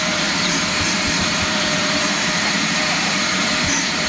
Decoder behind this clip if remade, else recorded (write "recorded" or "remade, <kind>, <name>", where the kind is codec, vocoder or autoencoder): remade, vocoder, BigVGAN v2